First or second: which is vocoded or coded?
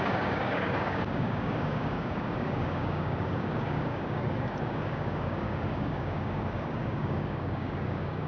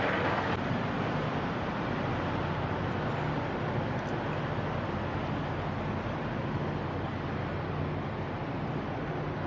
first